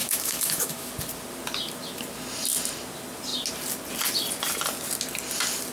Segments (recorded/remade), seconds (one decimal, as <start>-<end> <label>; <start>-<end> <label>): 0.0-0.9 remade; 0.9-5.7 recorded